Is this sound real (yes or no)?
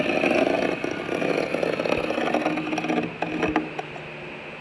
yes